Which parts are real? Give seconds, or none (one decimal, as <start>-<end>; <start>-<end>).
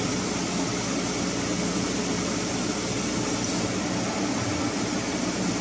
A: 0.0-5.6